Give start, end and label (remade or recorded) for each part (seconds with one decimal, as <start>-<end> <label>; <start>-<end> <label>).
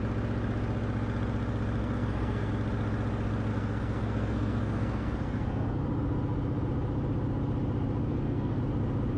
0.0-1.8 recorded; 1.8-2.5 remade; 2.5-3.5 recorded; 3.5-5.8 remade; 5.8-8.1 recorded; 8.1-8.6 remade; 8.6-9.2 recorded